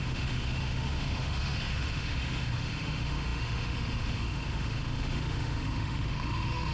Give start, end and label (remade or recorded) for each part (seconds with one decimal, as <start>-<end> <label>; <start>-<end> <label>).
0.0-6.7 remade